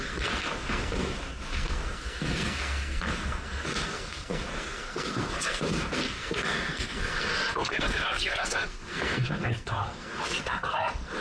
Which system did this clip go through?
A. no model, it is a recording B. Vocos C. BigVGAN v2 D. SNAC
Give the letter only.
D